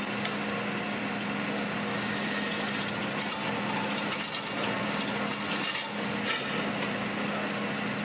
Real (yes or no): yes